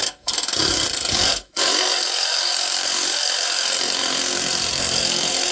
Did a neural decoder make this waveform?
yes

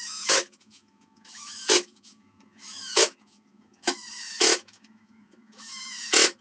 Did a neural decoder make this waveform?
yes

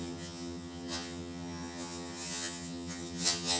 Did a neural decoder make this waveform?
yes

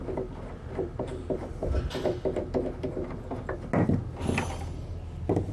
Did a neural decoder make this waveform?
no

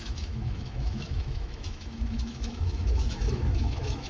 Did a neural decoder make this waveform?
yes